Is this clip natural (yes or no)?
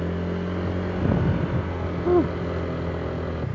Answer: yes